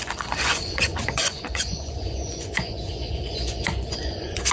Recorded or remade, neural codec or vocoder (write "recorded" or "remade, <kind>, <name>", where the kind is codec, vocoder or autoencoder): remade, vocoder, Vocos